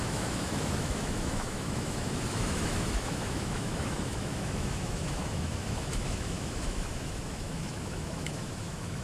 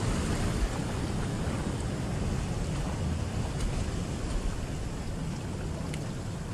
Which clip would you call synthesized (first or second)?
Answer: first